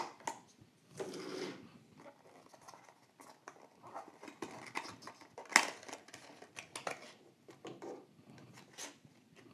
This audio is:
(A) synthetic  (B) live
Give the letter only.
B